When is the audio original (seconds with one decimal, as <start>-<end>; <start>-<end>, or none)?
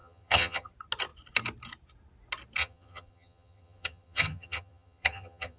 0.7-2.6